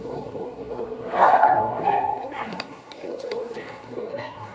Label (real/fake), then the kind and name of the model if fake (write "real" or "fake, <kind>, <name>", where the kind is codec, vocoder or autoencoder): fake, codec, SNAC